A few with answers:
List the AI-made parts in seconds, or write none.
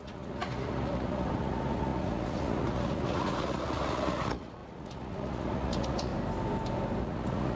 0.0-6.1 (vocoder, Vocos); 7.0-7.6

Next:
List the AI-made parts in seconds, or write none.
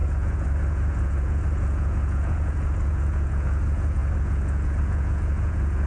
0.0-5.9 (vocoder, Vocos)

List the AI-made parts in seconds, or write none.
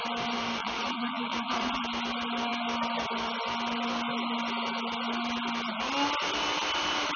0.6-1.8 (vocoder, Vocos)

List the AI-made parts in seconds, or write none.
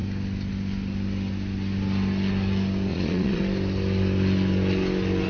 2.9-3.4 (vocoder, Vocos)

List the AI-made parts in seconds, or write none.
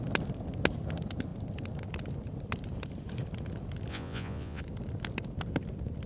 3.9-4.6 (vocoder, Vocos)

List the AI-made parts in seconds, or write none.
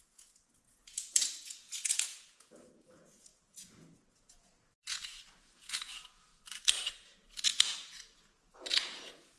0.0-6.3 (vocoder, Vocos); 6.9-9.4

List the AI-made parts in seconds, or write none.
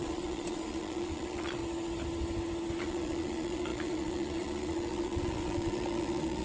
0.0-1.6 (vocoder, Vocos); 2.8-6.4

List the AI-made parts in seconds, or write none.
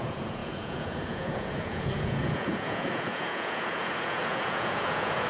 0.0-5.3 (vocoder, Vocos)